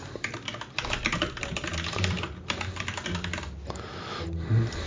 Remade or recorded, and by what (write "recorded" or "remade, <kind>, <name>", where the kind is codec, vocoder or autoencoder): recorded